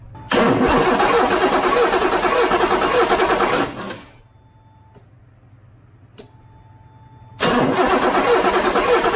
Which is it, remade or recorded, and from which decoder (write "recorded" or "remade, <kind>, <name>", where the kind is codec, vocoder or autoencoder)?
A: recorded